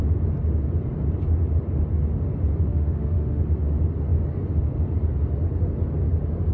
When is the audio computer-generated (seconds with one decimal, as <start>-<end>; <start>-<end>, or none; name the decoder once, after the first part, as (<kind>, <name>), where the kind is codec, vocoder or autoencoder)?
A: 2.7-3.4 (autoencoder, DAC-VAE)